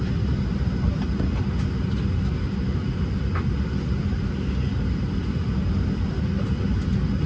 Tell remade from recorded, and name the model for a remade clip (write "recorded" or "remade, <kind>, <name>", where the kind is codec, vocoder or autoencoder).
recorded